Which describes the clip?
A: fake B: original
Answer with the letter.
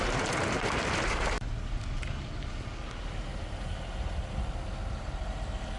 B